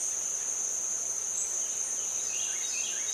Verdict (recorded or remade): recorded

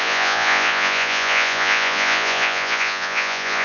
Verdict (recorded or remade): remade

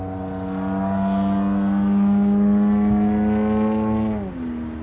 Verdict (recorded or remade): recorded